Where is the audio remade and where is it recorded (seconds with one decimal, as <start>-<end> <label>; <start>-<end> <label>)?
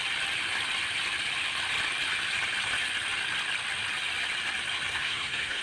0.0-4.9 recorded; 4.9-5.6 remade